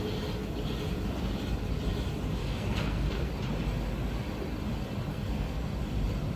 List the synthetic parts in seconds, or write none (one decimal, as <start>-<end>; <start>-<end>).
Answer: 2.4-3.3; 5.1-5.7